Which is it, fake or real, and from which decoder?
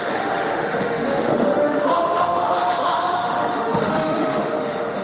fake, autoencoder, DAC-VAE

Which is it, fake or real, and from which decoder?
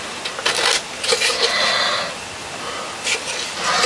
real